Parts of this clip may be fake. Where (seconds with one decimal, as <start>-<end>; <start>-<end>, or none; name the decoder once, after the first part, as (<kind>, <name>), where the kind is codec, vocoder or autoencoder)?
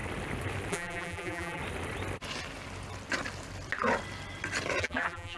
0.7-1.6 (vocoder, BigVGAN v2); 4.8-5.4